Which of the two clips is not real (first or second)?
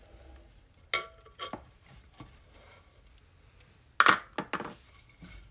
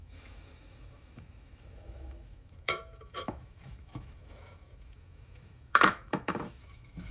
second